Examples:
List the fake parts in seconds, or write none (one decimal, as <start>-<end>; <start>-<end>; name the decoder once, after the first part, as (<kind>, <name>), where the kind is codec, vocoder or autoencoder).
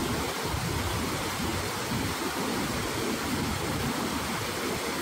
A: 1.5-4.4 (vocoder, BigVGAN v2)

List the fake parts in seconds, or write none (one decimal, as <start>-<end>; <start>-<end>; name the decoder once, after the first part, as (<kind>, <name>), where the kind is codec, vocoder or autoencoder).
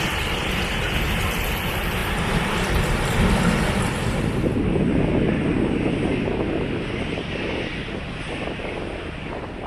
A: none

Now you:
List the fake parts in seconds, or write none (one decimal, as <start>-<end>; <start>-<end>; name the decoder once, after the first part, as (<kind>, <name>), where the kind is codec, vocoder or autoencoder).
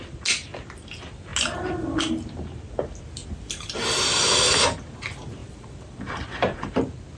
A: 5.4-7.2 (vocoder, BigVGAN v2)